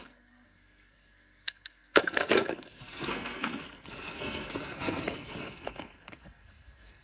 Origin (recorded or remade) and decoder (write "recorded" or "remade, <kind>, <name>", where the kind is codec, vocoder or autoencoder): remade, codec, SNAC